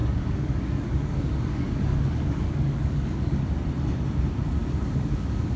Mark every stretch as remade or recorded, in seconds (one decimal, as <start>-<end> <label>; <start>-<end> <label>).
0.0-3.4 remade; 3.4-4.6 recorded; 4.6-5.6 remade